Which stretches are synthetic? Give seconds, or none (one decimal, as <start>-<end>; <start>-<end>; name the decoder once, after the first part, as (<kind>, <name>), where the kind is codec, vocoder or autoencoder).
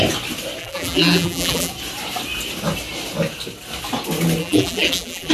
0.6-1.7 (vocoder, BigVGAN v2); 4.4-5.3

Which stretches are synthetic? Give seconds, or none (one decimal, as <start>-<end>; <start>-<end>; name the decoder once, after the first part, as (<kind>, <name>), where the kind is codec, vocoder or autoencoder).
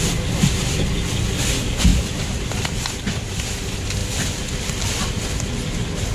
1.9-3.6 (vocoder, BigVGAN v2)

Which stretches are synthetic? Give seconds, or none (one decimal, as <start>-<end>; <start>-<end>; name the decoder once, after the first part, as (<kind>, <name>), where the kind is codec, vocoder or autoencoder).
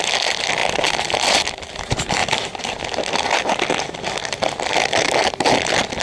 none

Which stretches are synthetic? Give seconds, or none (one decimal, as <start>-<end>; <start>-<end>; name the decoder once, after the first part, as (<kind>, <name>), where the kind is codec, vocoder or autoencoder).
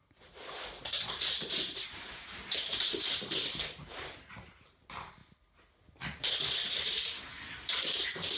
0.0-5.2 (vocoder, BigVGAN v2); 6.4-8.4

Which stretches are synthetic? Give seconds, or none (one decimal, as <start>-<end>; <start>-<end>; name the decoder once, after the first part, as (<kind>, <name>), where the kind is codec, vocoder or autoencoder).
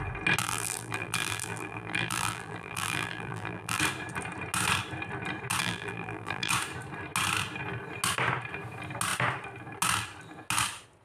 0.4-3.8 (vocoder, BigVGAN v2); 5.6-6.5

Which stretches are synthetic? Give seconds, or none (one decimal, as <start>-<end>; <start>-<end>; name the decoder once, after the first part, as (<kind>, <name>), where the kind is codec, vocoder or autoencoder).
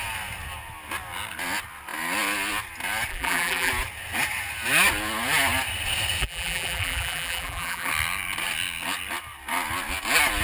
3.1-3.7 (vocoder, BigVGAN v2); 6.2-7.9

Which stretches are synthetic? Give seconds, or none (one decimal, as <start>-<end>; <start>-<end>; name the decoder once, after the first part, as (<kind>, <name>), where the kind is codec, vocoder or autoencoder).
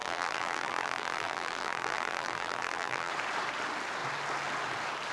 0.0-3.1 (vocoder, BigVGAN v2)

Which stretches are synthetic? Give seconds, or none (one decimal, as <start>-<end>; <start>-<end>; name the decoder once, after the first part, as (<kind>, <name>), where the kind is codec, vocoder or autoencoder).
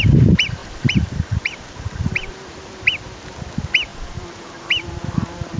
0.6-2.3 (vocoder, BigVGAN v2); 3.9-5.0